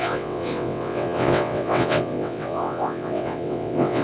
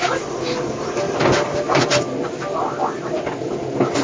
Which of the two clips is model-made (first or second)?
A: first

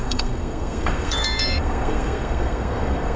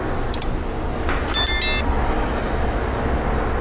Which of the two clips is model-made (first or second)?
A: first